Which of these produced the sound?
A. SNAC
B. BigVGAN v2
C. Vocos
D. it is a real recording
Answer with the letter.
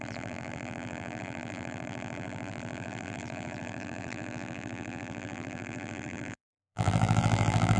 B